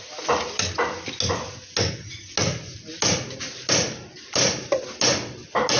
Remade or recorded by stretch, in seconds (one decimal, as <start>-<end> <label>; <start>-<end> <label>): 0.0-5.8 recorded